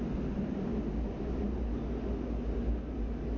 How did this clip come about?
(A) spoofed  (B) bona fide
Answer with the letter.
B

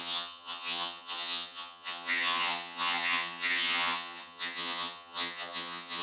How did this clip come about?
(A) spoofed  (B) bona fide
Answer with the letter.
A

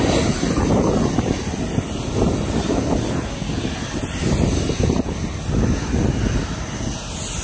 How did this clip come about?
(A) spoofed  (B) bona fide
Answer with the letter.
B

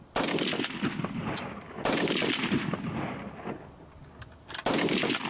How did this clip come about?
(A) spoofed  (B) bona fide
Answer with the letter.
B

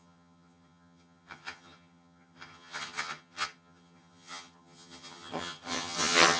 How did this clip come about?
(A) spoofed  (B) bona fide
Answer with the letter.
A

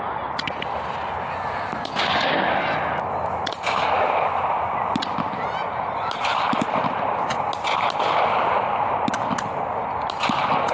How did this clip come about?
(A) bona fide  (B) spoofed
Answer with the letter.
A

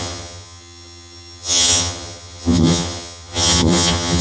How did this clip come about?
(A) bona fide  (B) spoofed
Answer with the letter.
B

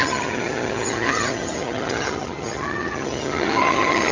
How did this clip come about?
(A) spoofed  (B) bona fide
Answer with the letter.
A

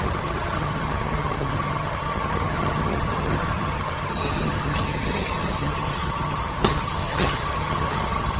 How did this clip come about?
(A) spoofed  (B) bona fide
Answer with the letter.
A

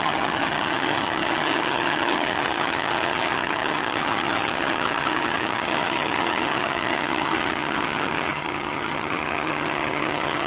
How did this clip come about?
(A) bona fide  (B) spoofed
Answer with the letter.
B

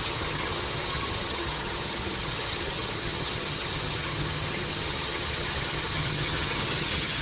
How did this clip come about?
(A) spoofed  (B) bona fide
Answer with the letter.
A